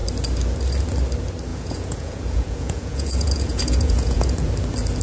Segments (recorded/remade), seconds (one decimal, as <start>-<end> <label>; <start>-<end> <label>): 0.0-1.5 recorded; 1.5-4.5 remade; 4.5-5.0 recorded